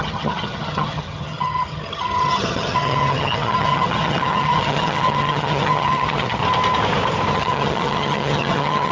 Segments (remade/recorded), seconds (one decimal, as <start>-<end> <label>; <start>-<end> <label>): 0.0-6.4 remade; 6.4-7.3 recorded; 7.3-8.9 remade